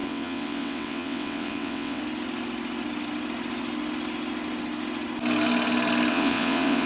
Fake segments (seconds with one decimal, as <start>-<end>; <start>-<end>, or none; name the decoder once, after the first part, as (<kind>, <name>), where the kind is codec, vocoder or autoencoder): 0.0-2.0 (vocoder, WaveNeXt); 6.1-6.9